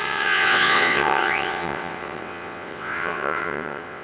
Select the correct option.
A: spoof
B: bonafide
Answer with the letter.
A